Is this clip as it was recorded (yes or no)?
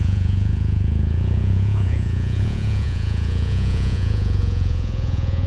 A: no